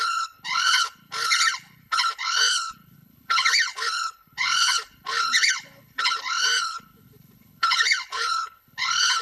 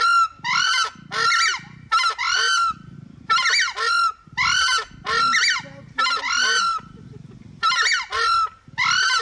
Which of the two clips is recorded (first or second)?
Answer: second